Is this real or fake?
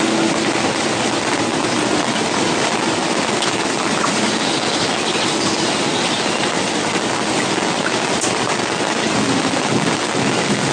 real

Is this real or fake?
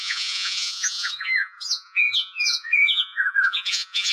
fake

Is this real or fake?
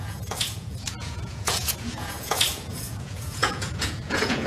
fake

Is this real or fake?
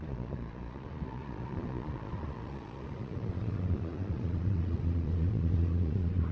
fake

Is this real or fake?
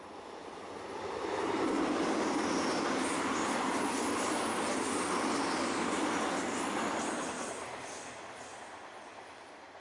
real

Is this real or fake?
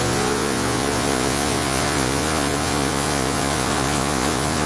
fake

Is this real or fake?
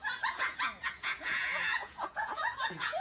fake